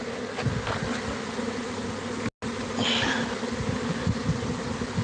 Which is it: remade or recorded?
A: recorded